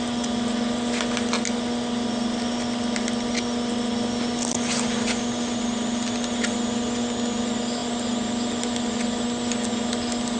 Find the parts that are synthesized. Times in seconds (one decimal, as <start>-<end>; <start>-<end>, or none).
none